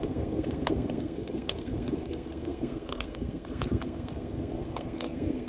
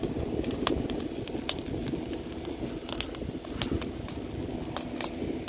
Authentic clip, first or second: second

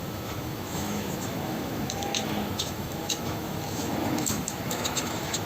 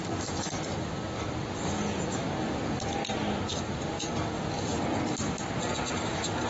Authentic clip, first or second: second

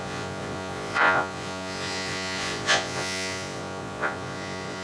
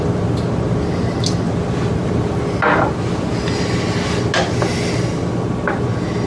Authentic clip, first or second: second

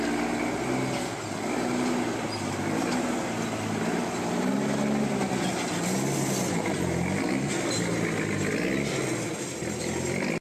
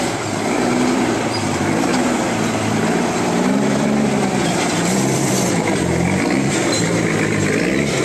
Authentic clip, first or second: first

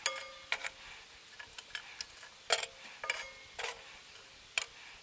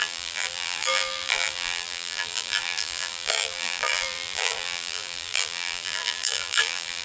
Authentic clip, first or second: first